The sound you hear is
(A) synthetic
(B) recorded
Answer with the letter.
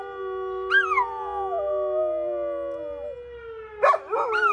B